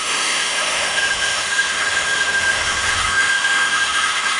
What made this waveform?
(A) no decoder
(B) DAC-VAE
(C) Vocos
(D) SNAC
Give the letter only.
B